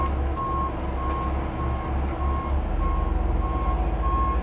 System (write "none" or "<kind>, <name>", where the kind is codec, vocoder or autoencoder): none